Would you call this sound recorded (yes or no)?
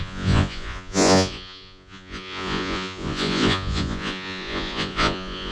no